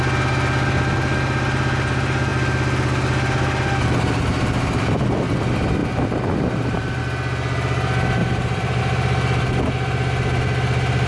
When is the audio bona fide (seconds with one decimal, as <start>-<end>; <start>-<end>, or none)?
0.0-5.8; 7.0-8.2; 8.8-11.1